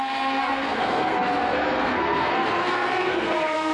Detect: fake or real fake